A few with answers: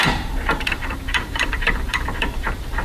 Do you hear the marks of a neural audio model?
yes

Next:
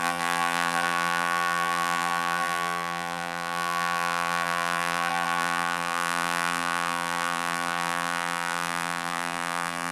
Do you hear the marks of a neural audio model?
yes